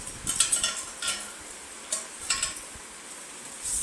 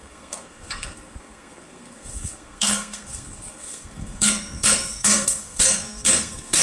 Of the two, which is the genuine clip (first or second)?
first